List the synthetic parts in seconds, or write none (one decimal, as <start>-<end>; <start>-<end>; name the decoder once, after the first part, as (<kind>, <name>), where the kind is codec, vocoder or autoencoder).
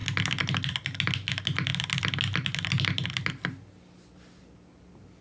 none